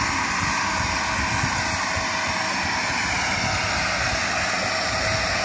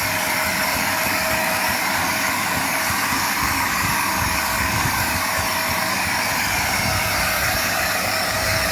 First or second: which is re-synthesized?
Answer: second